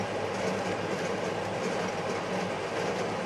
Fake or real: real